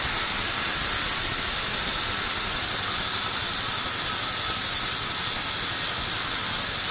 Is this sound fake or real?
real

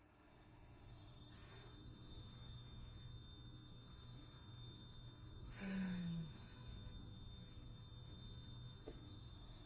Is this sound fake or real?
fake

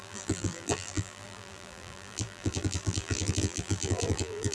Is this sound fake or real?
fake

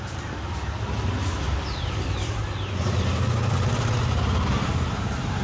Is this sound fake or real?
real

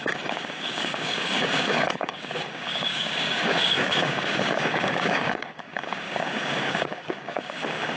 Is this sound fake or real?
fake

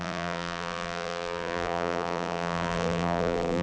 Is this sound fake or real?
fake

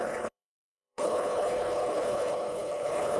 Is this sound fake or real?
fake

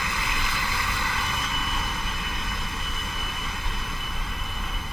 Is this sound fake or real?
real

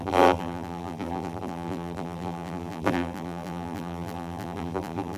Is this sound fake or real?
fake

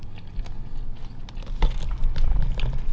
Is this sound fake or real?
real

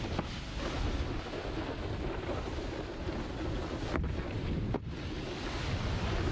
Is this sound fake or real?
real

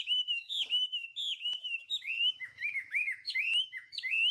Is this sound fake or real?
fake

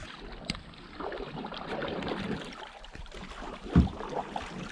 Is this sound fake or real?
fake